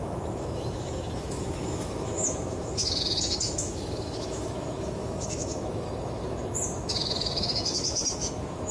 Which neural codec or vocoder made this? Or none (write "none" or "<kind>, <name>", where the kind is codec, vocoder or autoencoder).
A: autoencoder, DAC-VAE